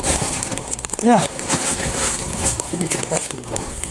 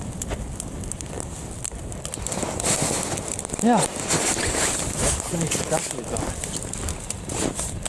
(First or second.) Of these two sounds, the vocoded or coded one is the first